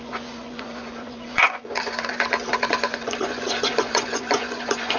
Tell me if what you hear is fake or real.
fake